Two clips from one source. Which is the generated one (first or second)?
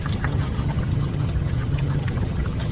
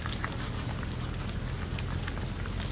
first